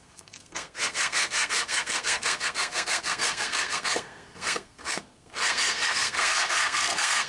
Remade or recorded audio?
remade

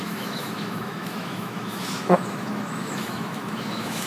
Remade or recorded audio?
remade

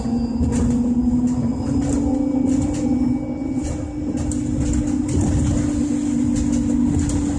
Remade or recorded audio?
recorded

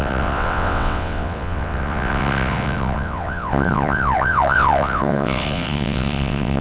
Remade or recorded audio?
remade